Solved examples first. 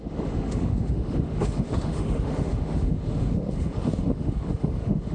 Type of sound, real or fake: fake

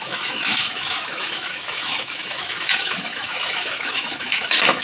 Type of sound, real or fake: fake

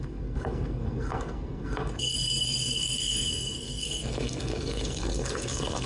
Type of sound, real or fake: fake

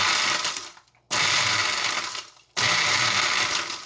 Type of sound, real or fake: real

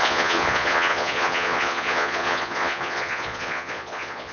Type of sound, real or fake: fake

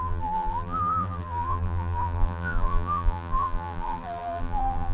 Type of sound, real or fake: fake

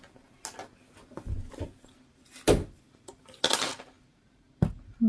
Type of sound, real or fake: real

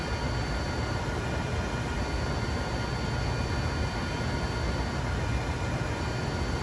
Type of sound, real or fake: real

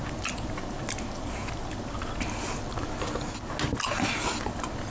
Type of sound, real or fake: real